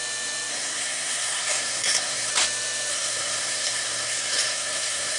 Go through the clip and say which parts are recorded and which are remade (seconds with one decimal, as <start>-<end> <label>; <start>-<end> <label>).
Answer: 0.0-0.5 recorded; 0.5-2.3 remade; 2.3-2.9 recorded; 2.9-5.2 remade